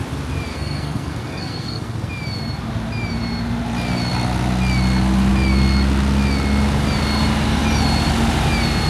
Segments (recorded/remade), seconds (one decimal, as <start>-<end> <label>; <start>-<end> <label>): 0.0-0.5 recorded; 0.5-2.1 remade; 2.1-8.9 recorded